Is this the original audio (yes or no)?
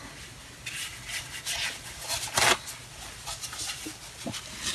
yes